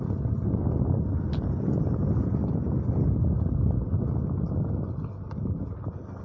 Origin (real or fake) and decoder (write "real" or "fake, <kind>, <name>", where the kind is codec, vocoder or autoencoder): real